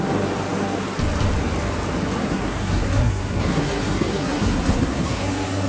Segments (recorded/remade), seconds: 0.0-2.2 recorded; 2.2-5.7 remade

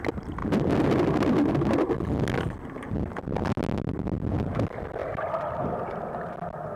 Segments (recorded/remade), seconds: 0.0-6.8 recorded

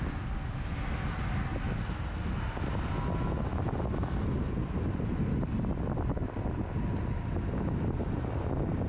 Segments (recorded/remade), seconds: 0.0-8.9 recorded

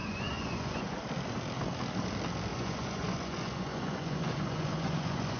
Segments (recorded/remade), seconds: 0.0-1.0 remade; 1.0-2.5 recorded; 2.5-5.4 remade